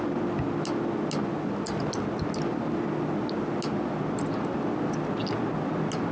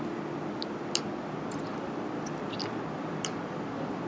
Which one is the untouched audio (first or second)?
first